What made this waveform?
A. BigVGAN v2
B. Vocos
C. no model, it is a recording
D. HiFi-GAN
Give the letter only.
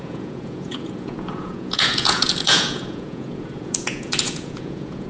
B